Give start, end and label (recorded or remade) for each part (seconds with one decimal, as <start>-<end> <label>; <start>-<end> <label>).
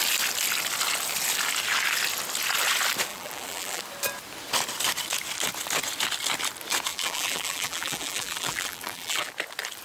0.0-3.1 recorded; 3.1-3.8 remade; 3.8-6.9 recorded; 6.9-9.3 remade; 9.3-9.8 recorded